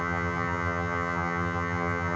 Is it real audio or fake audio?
fake